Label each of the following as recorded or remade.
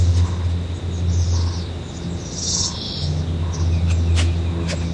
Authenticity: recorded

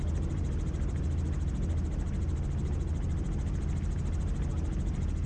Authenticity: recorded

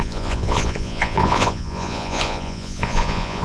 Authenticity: remade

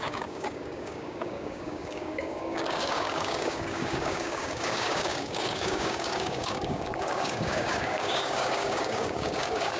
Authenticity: remade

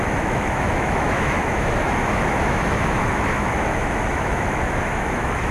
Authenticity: remade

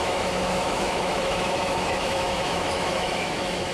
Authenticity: remade